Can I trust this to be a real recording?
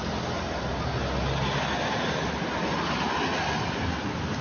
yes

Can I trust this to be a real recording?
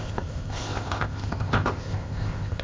no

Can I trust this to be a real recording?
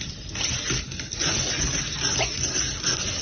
yes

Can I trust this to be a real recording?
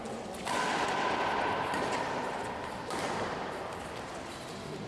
yes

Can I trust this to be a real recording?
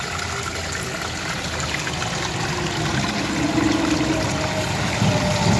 yes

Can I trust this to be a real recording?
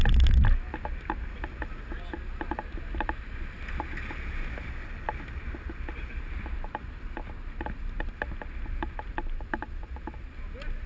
yes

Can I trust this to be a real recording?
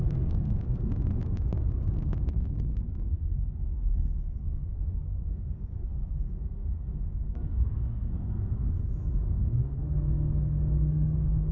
no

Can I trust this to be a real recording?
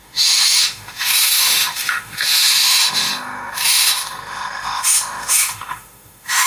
no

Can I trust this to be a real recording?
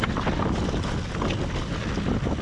yes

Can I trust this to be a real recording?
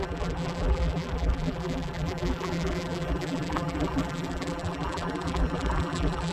no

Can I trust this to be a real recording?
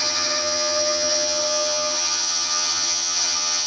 no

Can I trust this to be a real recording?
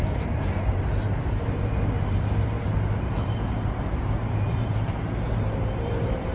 no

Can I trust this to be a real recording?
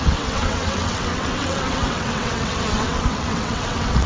no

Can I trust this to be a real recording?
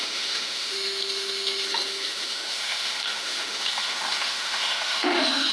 no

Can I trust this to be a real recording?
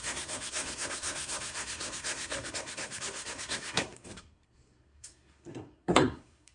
no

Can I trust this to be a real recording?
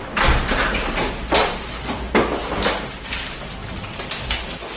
yes